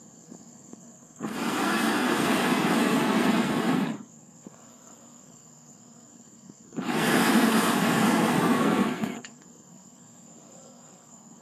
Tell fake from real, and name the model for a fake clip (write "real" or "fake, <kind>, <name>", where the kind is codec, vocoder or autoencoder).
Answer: fake, codec, SNAC